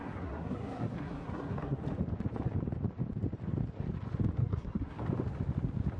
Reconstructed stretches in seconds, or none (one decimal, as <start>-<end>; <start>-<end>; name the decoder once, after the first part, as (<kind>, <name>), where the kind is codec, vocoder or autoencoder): 0.0-1.8 (codec, SNAC); 4.4-5.0